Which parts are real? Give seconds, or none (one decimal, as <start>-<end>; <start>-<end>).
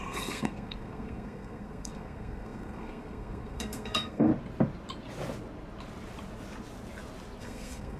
4.3-7.4